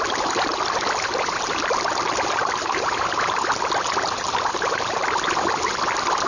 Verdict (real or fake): fake